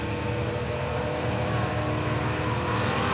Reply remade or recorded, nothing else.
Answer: recorded